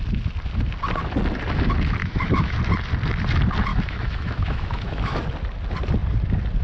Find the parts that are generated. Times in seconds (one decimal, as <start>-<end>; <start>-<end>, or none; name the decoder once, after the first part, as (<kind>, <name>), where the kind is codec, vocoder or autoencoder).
2.0-2.6 (autoencoder, DAC-VAE); 3.7-5.2